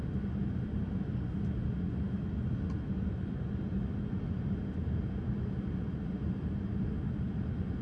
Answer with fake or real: real